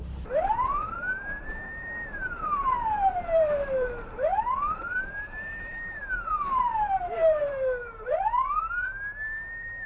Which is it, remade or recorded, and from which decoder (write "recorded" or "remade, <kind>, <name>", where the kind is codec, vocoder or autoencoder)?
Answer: remade, vocoder, BigVGAN v2